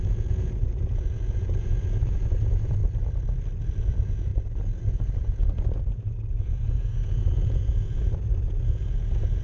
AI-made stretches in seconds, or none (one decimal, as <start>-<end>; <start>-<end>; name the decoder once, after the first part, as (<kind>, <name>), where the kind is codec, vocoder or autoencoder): 0.0-2.8 (vocoder, Vocos); 3.8-4.3; 4.9-9.4